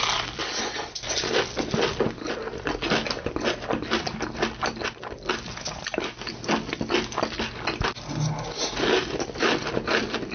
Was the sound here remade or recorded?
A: recorded